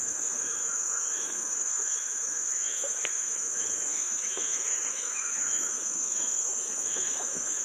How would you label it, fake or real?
fake